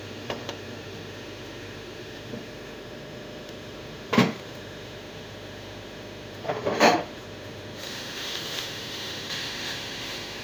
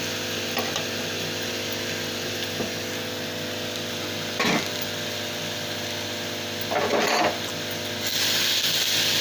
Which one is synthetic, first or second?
first